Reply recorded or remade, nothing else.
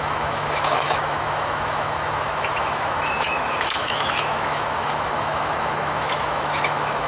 remade